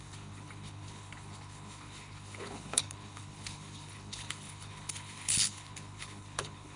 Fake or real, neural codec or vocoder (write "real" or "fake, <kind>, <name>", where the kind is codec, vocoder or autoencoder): fake, codec, HILCodec